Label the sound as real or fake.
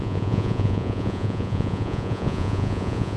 fake